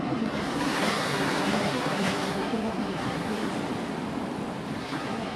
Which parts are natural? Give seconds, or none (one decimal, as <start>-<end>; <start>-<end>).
3.5-4.8